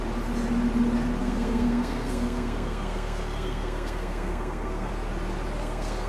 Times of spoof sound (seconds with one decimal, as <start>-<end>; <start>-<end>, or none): 1.2-4.9; 5.6-6.1